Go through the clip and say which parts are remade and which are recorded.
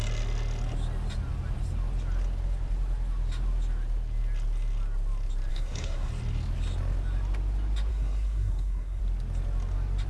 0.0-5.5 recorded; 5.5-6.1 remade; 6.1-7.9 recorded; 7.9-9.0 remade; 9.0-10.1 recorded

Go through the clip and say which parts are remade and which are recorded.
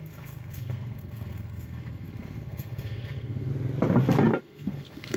0.0-3.5 remade; 3.5-4.4 recorded; 4.4-5.2 remade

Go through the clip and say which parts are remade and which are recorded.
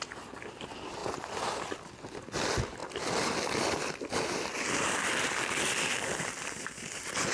0.0-7.3 recorded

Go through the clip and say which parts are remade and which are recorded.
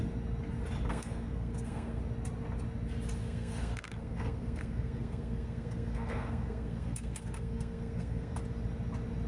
0.0-0.9 recorded; 0.9-2.0 remade; 2.0-3.2 recorded; 3.2-8.4 remade; 8.4-9.3 recorded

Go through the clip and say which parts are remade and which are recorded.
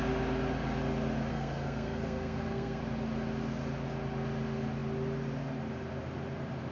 0.0-1.3 recorded; 1.3-2.8 remade; 2.8-6.7 recorded